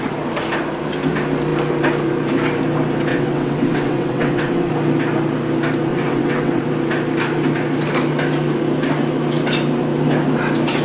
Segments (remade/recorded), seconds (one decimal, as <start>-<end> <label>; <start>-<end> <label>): 0.0-3.1 recorded; 3.1-4.7 remade; 4.7-5.9 recorded; 5.9-6.6 remade; 6.6-10.8 recorded